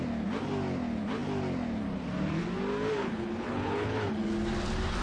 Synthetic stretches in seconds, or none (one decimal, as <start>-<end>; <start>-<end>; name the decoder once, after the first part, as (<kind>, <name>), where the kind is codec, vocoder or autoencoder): 3.0-4.3 (codec, HILCodec)